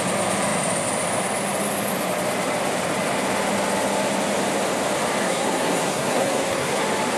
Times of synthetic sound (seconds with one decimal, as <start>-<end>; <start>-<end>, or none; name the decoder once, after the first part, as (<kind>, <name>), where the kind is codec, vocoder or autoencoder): 5.2-6.8 (codec, SNAC)